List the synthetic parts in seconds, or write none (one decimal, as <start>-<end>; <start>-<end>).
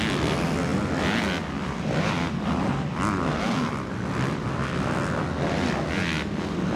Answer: none